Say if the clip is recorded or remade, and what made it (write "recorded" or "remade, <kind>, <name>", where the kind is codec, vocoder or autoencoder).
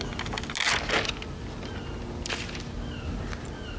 recorded